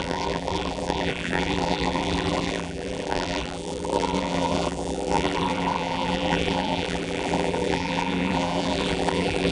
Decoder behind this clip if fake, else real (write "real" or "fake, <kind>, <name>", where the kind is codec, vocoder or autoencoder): fake, vocoder, BigVGAN v2